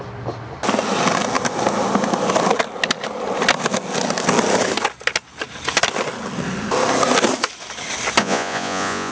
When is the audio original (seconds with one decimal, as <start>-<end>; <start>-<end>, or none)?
0.0-8.2